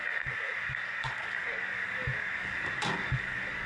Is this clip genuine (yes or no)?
no